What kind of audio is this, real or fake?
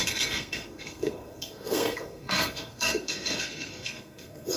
fake